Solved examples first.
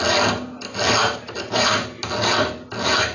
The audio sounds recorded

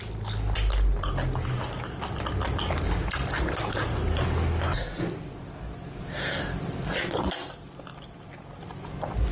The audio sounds recorded